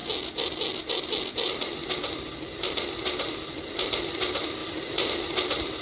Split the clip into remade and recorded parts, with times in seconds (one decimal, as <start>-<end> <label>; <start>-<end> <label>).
0.0-4.6 recorded; 4.6-5.1 remade; 5.1-5.8 recorded